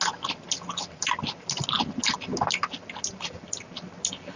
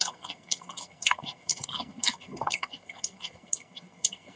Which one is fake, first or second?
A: second